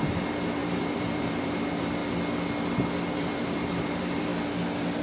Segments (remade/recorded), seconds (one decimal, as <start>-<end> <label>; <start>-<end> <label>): 0.0-2.0 remade; 2.0-3.1 recorded; 3.1-4.3 remade; 4.3-5.0 recorded